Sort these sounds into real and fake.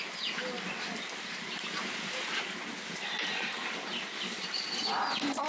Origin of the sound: real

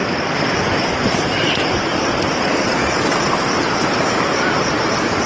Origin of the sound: real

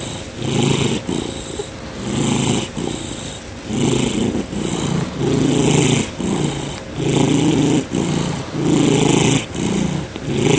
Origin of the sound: real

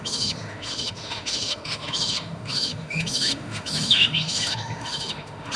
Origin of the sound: fake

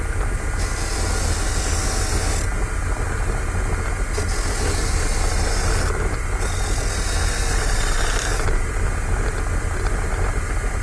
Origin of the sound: real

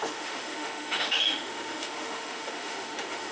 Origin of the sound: fake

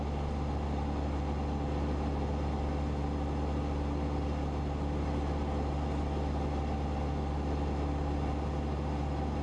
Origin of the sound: real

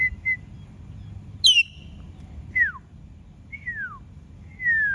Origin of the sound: real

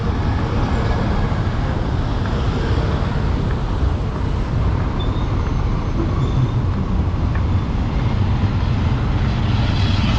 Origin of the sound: real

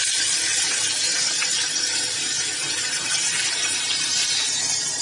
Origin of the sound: real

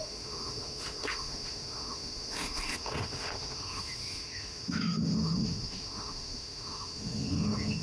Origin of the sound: fake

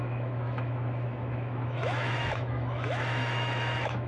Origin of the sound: fake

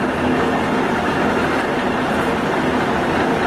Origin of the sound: real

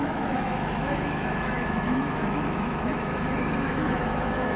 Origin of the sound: fake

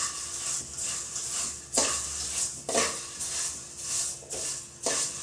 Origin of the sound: real